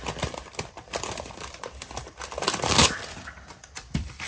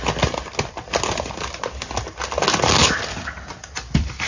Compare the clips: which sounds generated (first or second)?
first